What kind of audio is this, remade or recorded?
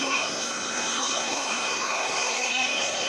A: remade